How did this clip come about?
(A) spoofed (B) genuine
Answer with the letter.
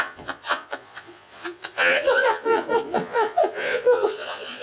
A